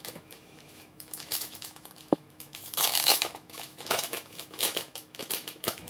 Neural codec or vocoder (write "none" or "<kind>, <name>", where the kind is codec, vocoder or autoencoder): autoencoder, DAC-VAE